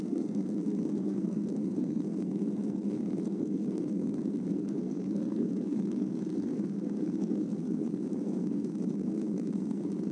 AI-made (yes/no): yes